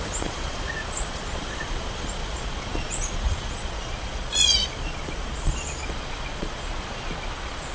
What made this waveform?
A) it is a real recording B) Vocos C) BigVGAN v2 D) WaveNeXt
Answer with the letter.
B